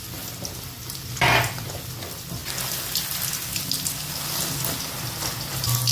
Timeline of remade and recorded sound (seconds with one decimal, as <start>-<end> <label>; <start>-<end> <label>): 0.0-5.9 recorded